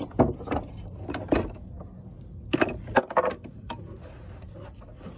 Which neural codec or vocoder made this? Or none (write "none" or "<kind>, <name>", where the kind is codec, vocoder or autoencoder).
none